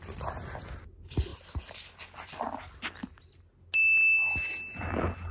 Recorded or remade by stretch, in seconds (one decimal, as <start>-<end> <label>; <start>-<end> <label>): 0.0-5.3 recorded